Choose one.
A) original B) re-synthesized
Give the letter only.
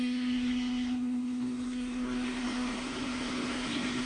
B